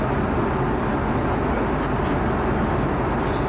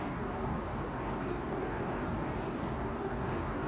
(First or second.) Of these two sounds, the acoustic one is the first